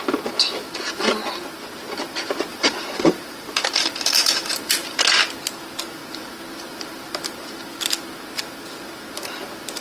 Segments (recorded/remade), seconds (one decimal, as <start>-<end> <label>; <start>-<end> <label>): 0.0-2.5 recorded; 2.5-5.0 remade; 5.0-9.8 recorded